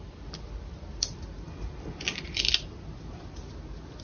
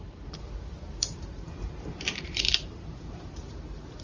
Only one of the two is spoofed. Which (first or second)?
second